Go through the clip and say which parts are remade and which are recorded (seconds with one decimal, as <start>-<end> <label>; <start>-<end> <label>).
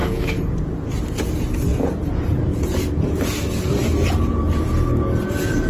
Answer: 0.0-0.7 remade; 0.7-1.7 recorded; 1.7-3.3 remade; 3.3-5.7 recorded